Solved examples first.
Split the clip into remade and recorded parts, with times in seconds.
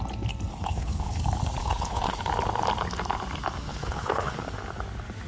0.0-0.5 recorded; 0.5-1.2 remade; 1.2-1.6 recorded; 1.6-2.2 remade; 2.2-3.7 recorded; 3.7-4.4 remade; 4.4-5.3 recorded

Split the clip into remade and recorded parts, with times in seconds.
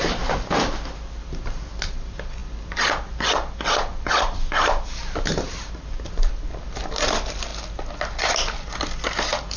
0.0-9.6 recorded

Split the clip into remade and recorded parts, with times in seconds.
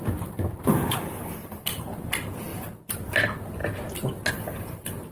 0.0-5.1 recorded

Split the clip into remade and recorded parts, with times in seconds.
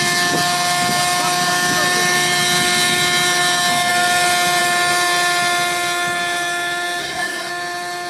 0.0-7.0 recorded; 7.0-7.5 remade; 7.5-8.1 recorded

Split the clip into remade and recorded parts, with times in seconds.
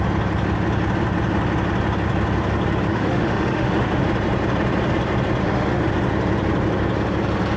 0.0-2.9 recorded; 2.9-4.0 remade; 4.0-5.4 recorded; 5.4-5.9 remade; 5.9-7.6 recorded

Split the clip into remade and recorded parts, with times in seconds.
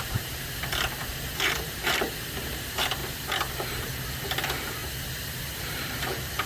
0.0-3.0 remade; 3.0-3.7 recorded; 3.7-4.8 remade; 4.8-5.7 recorded; 5.7-6.5 remade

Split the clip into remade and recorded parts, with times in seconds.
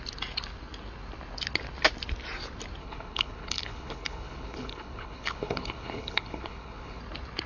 0.0-2.8 recorded; 2.8-7.0 remade; 7.0-7.5 recorded